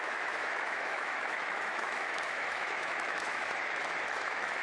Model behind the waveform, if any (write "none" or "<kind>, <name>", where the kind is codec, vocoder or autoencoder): autoencoder, DAC-VAE